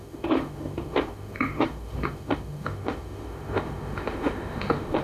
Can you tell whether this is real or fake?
fake